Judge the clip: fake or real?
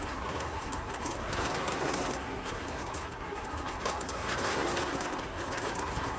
fake